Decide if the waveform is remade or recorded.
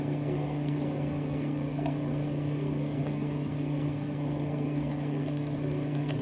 remade